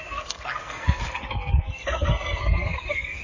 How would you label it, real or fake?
fake